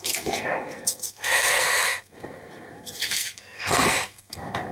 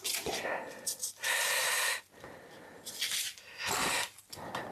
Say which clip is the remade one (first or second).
first